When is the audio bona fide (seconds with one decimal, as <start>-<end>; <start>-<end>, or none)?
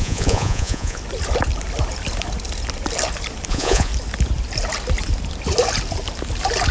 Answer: 1.0-3.5; 3.9-6.7